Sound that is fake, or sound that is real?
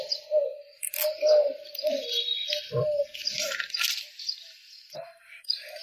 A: real